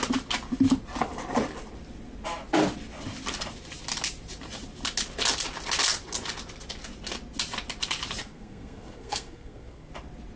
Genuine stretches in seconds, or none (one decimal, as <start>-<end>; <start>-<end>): 0.0-8.2; 9.9-10.4